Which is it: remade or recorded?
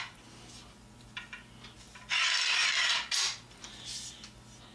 recorded